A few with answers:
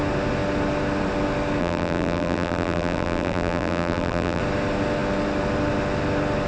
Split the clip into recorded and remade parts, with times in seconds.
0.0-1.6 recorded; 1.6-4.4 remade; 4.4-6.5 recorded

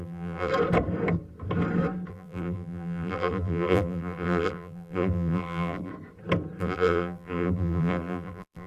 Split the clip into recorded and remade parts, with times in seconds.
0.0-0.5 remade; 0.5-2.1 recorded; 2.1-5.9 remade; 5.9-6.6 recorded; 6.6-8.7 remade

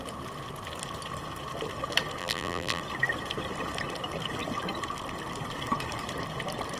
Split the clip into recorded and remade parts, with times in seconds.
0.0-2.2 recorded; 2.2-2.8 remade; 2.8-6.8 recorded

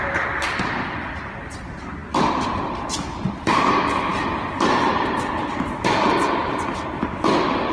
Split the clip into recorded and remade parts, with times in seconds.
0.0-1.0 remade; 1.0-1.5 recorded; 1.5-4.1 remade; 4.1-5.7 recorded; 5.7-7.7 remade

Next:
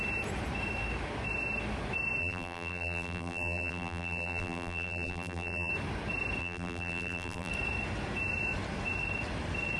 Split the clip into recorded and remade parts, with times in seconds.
0.0-2.2 recorded; 2.2-5.7 remade; 5.7-6.4 recorded; 6.4-7.5 remade; 7.5-9.8 recorded

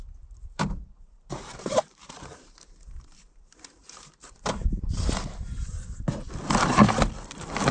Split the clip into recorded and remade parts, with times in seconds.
0.0-0.4 recorded; 0.4-5.0 remade; 5.0-7.7 recorded

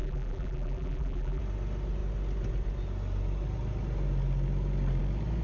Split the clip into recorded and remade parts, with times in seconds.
0.0-1.4 remade; 1.4-5.4 recorded

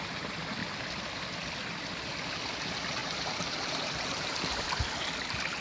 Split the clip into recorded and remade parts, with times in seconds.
0.0-3.0 recorded; 3.0-4.8 remade; 4.8-5.6 recorded